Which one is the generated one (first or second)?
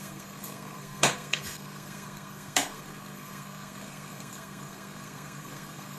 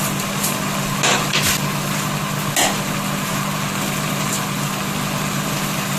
first